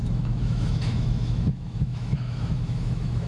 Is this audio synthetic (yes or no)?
yes